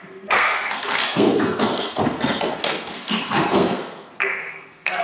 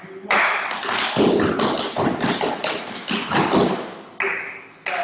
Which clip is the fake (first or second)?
first